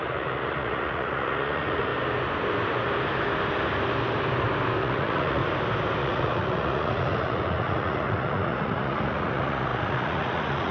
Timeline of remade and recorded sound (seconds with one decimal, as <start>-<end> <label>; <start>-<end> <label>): 0.0-1.9 remade; 1.9-4.8 recorded; 4.8-5.4 remade; 5.4-6.0 recorded; 6.0-10.7 remade